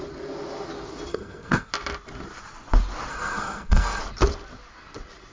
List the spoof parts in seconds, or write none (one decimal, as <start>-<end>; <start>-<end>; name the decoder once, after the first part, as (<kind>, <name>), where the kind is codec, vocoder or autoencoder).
1.1-1.7 (codec, SNAC); 3.1-4.0